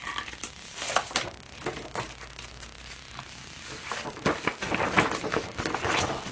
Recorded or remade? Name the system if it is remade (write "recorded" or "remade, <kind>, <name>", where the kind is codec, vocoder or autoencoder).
recorded